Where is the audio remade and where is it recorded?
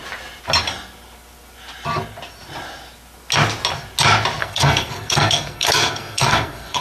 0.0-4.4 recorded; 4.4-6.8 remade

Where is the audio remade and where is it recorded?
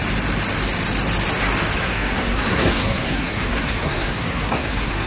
0.0-1.8 recorded; 1.8-5.1 remade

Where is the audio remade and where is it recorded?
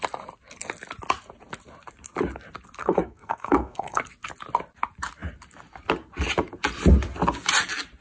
0.0-2.8 recorded; 2.8-4.0 remade; 4.0-8.0 recorded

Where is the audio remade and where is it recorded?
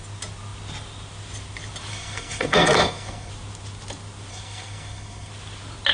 0.0-1.9 recorded; 1.9-3.3 remade; 3.3-4.3 recorded; 4.3-5.3 remade; 5.3-5.9 recorded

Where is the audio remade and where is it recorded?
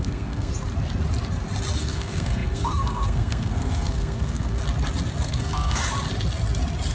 0.0-0.5 remade; 0.5-1.8 recorded; 1.8-4.6 remade; 4.6-5.2 recorded; 5.2-5.8 remade; 5.8-6.9 recorded